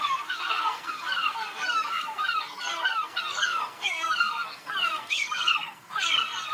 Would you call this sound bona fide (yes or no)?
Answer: no